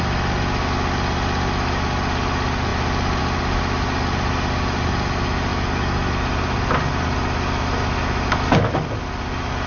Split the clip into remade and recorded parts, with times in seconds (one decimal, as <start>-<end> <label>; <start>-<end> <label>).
0.0-9.7 recorded